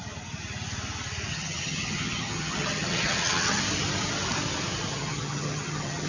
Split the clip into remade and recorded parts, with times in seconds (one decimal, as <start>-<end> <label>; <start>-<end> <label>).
0.0-1.3 recorded; 1.3-3.6 remade; 3.6-4.9 recorded; 4.9-6.1 remade